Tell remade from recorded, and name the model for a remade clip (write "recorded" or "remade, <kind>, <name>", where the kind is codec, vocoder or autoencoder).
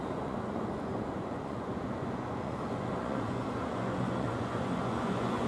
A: remade, vocoder, Vocos